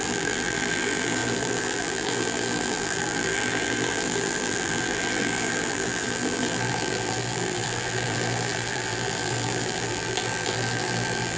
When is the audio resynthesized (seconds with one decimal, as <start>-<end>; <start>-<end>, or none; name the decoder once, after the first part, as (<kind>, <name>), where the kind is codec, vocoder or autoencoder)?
0.0-11.4 (vocoder, BigVGAN v2)